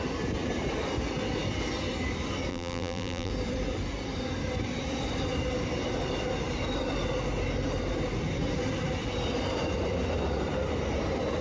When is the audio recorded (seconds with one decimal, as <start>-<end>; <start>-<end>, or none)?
0.0-2.5; 3.3-11.4